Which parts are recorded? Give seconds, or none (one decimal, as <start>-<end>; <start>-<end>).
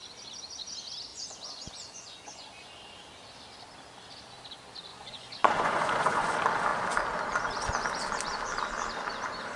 0.0-1.1; 2.7-4.9; 6.3-9.6